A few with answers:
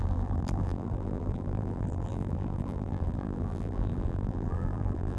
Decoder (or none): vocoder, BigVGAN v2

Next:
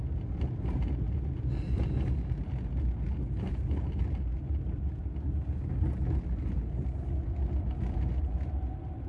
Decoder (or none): none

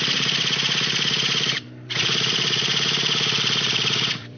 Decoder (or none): vocoder, BigVGAN v2